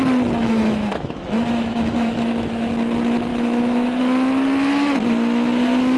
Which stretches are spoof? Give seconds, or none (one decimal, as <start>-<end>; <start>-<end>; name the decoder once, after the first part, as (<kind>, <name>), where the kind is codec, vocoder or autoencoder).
0.4-2.7 (autoencoder, DAC-VAE); 3.3-4.0